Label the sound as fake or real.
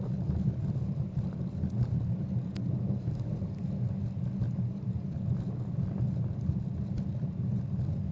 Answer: real